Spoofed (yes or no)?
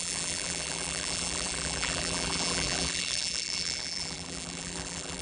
yes